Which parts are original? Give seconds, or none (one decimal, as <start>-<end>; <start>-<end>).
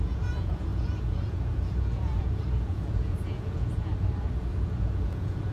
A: 3.9-4.4